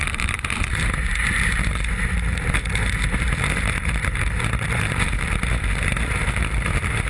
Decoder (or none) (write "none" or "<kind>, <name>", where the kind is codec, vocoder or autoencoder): vocoder, BigVGAN v2